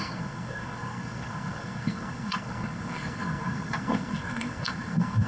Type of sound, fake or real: fake